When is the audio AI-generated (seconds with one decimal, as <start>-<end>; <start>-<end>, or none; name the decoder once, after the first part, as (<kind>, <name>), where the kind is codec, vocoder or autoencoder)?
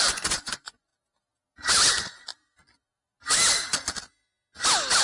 0.0-0.9 (vocoder, Vocos); 1.9-2.3